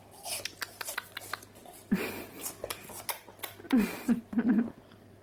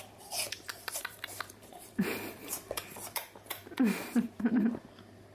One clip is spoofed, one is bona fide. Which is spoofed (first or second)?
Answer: second